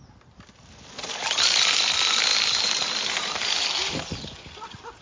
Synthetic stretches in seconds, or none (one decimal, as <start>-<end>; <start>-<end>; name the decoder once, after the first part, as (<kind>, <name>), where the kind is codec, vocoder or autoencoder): none

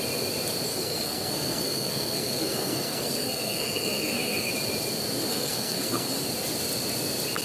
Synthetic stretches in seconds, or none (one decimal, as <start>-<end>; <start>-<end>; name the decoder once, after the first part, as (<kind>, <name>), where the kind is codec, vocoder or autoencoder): 0.7-4.5 (codec, SNAC); 5.3-6.2

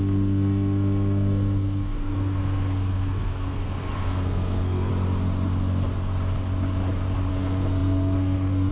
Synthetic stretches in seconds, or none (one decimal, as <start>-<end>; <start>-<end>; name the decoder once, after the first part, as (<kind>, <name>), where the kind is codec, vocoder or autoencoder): 0.0-4.9 (codec, SNAC); 7.3-8.7

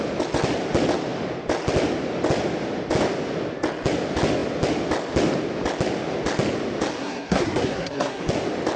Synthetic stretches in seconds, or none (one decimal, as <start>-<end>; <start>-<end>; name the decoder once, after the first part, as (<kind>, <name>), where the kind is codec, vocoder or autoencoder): 7.0-8.2 (codec, SNAC)

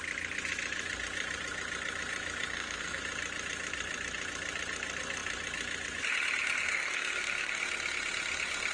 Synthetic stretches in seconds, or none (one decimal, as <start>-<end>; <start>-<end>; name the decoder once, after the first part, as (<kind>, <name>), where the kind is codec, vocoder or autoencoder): 2.5-3.0 (codec, SNAC); 6.7-7.6